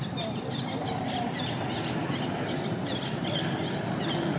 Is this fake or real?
fake